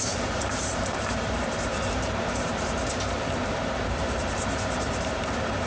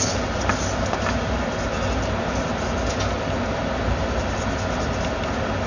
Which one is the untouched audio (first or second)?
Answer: second